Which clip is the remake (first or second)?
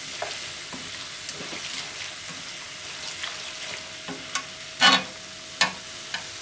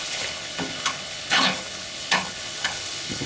second